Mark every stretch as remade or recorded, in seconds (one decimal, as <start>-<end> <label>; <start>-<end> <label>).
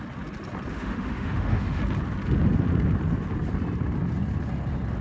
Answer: 0.0-0.7 recorded; 0.7-1.8 remade; 1.8-5.0 recorded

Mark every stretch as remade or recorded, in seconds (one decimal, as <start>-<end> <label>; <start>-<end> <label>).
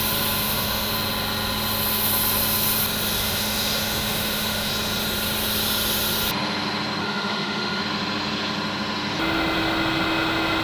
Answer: 0.0-0.4 recorded; 0.4-0.9 remade; 0.9-3.2 recorded; 3.2-4.7 remade; 4.7-7.0 recorded; 7.0-7.8 remade; 7.8-10.6 recorded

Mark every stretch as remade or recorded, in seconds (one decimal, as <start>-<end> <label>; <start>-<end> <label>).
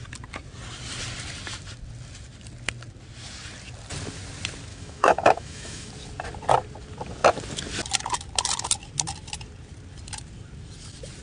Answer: 0.0-4.7 recorded; 4.7-5.9 remade; 5.9-11.2 recorded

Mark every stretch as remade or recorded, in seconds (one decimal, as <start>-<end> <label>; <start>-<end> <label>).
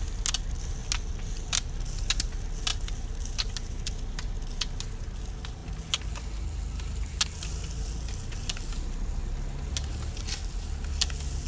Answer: 0.0-11.5 recorded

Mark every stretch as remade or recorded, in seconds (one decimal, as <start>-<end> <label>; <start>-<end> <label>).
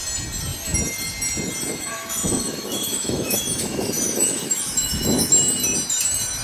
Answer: 0.0-1.7 recorded; 1.7-5.3 remade; 5.3-6.4 recorded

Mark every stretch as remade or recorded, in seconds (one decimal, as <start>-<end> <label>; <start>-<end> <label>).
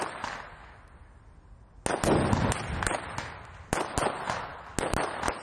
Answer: 0.0-5.4 recorded